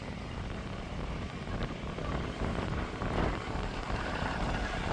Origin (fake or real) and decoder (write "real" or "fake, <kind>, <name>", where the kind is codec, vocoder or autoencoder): fake, vocoder, BigVGAN v2